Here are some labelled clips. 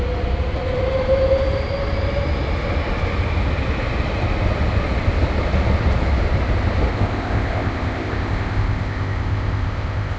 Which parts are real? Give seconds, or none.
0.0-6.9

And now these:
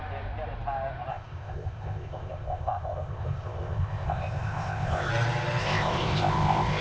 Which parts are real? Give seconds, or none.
0.0-1.1; 5.1-5.6

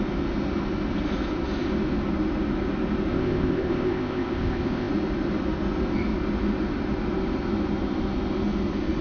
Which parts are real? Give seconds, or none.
0.0-3.1; 4.9-9.0